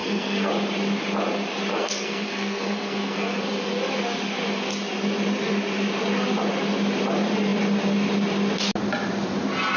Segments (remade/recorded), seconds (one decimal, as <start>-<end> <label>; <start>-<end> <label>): 0.0-0.5 remade; 0.5-1.7 recorded; 1.7-3.5 remade; 3.5-9.8 recorded